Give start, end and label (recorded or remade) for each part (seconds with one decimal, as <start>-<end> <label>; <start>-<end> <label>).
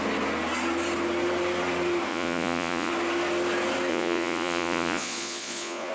0.0-2.1 recorded; 2.1-2.9 remade; 2.9-3.9 recorded; 3.9-5.9 remade